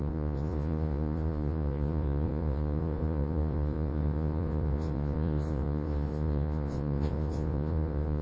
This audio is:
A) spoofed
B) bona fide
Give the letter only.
A